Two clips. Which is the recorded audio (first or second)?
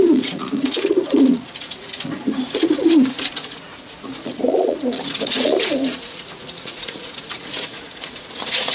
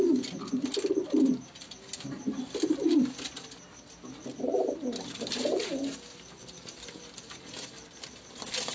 second